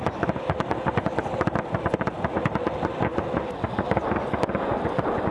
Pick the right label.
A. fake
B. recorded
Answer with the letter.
B